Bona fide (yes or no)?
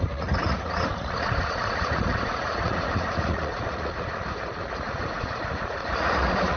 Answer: no